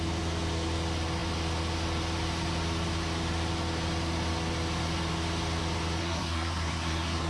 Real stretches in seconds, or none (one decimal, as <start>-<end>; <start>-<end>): 0.0-6.0